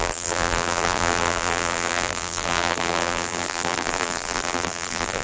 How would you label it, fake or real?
fake